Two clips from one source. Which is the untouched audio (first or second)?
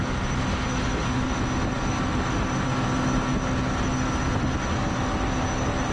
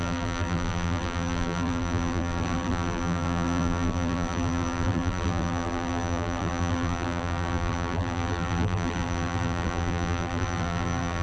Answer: first